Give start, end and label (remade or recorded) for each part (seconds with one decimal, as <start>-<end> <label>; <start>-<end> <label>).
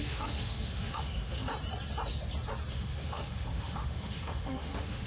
0.0-1.5 remade; 1.5-2.7 recorded; 2.7-5.1 remade